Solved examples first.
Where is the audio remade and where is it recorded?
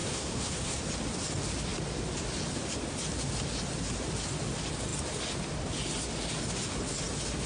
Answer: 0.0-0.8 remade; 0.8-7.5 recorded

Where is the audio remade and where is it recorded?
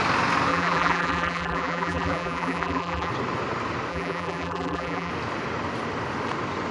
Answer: 0.0-0.5 recorded; 0.5-3.1 remade; 3.1-3.9 recorded; 3.9-5.1 remade; 5.1-6.7 recorded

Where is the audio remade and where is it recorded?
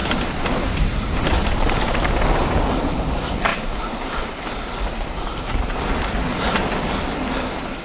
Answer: 0.0-2.1 remade; 2.1-3.5 recorded; 3.5-4.4 remade; 4.4-4.9 recorded; 4.9-5.9 remade; 5.9-7.8 recorded